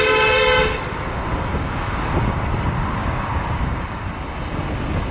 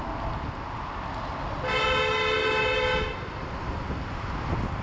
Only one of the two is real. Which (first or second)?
second